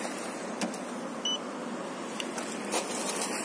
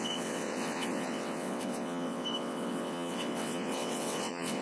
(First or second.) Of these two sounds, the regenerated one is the second